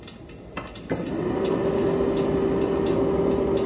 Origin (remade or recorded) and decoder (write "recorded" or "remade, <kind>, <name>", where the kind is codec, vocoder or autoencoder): recorded